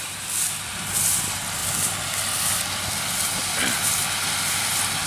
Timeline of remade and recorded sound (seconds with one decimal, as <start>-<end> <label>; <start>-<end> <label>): 0.0-5.1 recorded